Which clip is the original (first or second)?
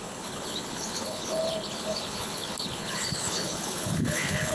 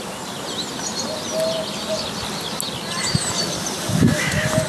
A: second